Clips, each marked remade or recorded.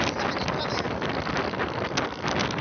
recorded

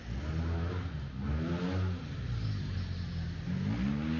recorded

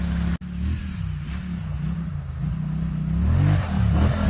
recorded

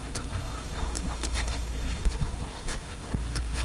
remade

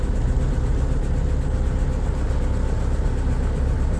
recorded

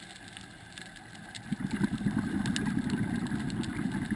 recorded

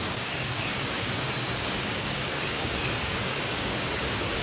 remade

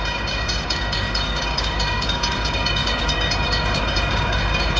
remade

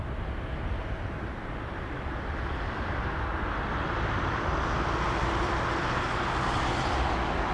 recorded